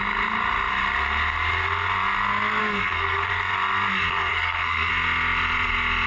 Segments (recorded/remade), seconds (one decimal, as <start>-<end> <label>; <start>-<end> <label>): 0.0-2.6 recorded; 2.6-3.3 remade; 3.3-4.3 recorded; 4.3-4.9 remade; 4.9-6.1 recorded